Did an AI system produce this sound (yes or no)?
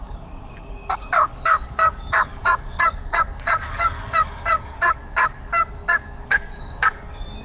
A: yes